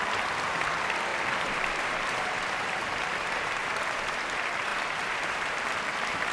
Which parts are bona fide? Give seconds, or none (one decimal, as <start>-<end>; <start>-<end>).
0.0-1.1; 4.2-4.7; 5.7-6.3